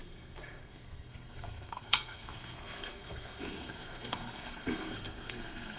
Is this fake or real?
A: fake